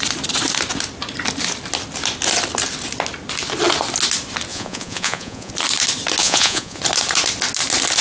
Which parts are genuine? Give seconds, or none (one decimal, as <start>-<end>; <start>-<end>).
0.0-4.5; 5.5-6.2; 6.8-8.0